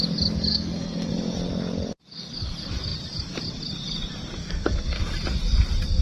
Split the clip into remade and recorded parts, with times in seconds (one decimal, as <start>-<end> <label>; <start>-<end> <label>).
0.0-0.5 recorded; 0.5-1.1 remade; 1.1-4.4 recorded; 4.4-5.0 remade; 5.0-6.0 recorded

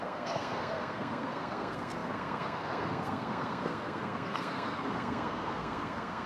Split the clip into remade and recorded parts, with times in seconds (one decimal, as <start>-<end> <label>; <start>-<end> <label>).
0.0-6.3 remade

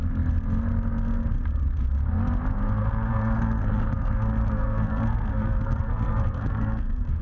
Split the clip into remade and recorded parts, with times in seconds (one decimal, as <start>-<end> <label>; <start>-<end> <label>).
0.0-2.8 recorded; 2.8-7.2 remade

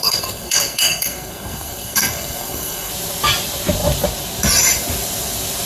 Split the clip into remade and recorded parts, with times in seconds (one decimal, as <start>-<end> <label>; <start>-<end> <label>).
0.0-2.9 remade; 2.9-5.7 recorded

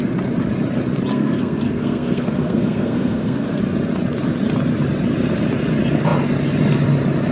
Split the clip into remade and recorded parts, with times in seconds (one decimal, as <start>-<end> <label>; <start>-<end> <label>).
0.0-1.1 recorded; 1.1-3.6 remade; 3.6-7.3 recorded

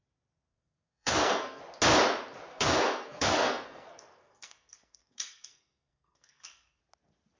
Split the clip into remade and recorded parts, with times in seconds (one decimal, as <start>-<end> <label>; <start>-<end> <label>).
0.0-0.5 recorded; 0.5-1.6 remade; 1.6-2.5 recorded; 2.5-6.8 remade; 6.8-7.4 recorded

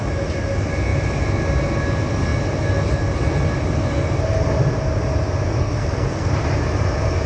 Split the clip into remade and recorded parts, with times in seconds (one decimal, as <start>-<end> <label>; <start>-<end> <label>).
0.0-5.6 recorded; 5.6-6.3 remade; 6.3-7.3 recorded

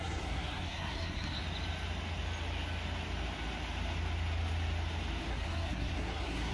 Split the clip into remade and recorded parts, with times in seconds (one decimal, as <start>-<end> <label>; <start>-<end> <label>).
0.0-1.4 remade; 1.4-5.3 recorded; 5.3-6.5 remade